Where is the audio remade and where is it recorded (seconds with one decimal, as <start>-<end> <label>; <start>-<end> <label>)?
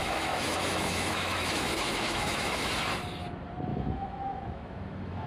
0.0-2.7 remade; 2.7-3.7 recorded; 3.7-5.3 remade